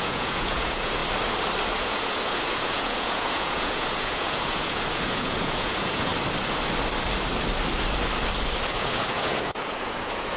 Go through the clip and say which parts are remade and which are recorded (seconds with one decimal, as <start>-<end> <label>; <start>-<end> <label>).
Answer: 0.0-1.0 remade; 1.0-1.7 recorded; 1.7-6.1 remade; 6.1-8.7 recorded; 8.7-10.4 remade